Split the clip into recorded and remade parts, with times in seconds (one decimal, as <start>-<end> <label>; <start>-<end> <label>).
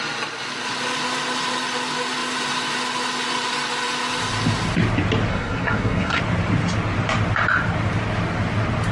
0.0-5.3 recorded; 5.3-6.2 remade; 6.2-8.9 recorded